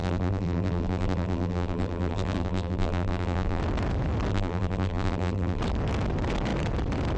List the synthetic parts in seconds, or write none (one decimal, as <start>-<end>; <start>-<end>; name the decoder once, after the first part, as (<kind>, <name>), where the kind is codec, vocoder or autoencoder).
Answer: 0.0-3.6 (vocoder, BigVGAN v2); 4.3-5.6